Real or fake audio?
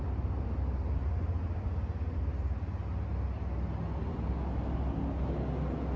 real